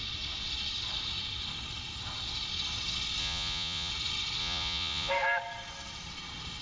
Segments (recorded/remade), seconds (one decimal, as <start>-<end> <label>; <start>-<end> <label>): 0.0-3.2 recorded; 3.2-3.9 remade; 3.9-4.4 recorded; 4.4-5.1 remade; 5.1-6.6 recorded